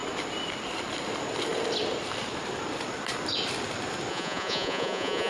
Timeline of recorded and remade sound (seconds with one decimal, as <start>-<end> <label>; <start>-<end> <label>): 0.0-4.1 recorded; 4.1-5.3 remade